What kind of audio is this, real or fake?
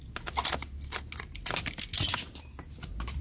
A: real